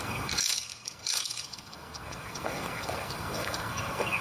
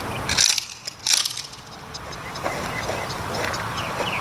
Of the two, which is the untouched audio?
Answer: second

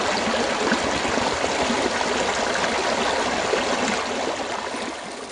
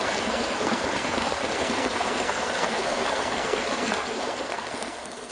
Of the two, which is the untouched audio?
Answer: first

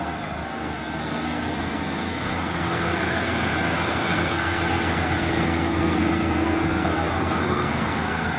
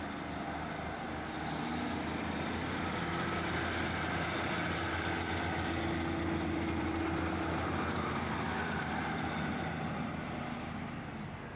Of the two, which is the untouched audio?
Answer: second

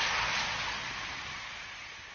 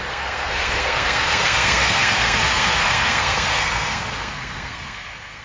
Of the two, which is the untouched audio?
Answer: first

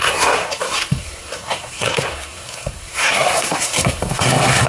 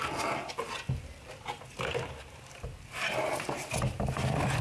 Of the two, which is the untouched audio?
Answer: second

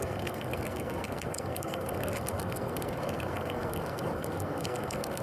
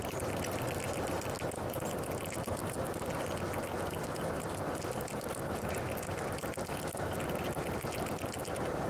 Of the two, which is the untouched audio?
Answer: second